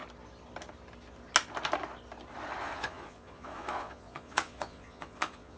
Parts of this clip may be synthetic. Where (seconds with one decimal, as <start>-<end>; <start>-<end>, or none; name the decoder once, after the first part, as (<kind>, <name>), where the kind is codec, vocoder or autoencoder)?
2.6-5.6 (vocoder, Vocos)

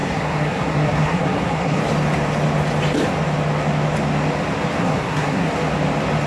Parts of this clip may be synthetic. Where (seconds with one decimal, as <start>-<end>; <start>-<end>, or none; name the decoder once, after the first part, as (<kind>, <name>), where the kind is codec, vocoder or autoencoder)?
0.0-1.8 (codec, SNAC); 4.8-5.5

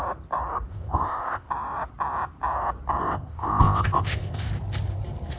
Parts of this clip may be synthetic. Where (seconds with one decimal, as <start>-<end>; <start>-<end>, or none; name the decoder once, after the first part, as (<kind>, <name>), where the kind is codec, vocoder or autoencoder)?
0.7-1.5 (codec, ZipCodec); 3.0-4.5